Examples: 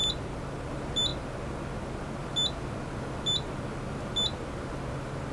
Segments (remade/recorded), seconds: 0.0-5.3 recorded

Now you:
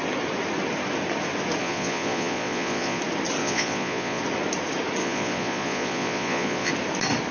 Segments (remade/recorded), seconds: 0.0-1.6 recorded; 1.6-3.0 remade; 3.0-3.4 recorded; 3.4-4.2 remade; 4.2-5.0 recorded; 5.0-6.7 remade; 6.7-7.3 recorded